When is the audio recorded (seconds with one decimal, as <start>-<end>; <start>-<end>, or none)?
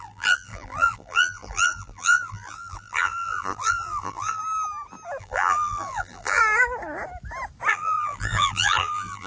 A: 4.4-5.2; 6.4-7.7